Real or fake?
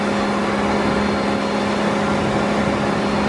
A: real